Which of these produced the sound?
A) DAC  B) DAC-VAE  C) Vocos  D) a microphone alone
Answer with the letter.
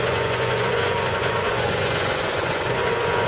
C